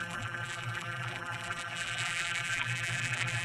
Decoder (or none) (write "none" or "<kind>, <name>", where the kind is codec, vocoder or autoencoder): vocoder, BigVGAN v2